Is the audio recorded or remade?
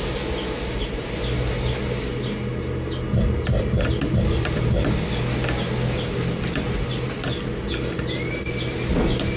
recorded